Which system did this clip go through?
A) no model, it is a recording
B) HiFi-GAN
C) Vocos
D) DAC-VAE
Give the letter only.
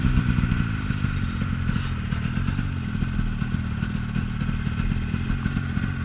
A